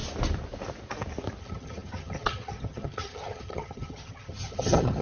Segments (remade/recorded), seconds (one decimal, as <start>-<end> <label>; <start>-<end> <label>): 0.0-1.4 recorded; 1.4-5.0 remade